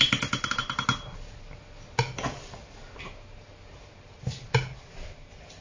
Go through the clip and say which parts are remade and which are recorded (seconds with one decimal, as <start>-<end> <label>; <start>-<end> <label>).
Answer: 0.0-5.6 recorded